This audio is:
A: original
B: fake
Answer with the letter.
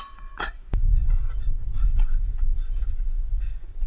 B